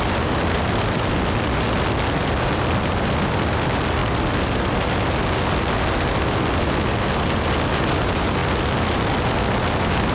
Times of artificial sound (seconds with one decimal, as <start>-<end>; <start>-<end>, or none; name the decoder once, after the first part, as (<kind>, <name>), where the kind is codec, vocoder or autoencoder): none